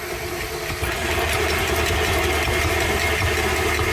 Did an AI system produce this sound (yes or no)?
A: no